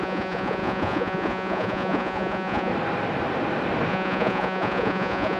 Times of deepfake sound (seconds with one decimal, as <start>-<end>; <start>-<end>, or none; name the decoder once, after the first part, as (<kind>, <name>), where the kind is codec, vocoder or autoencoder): 0.0-2.7 (vocoder, Vocos); 3.9-5.4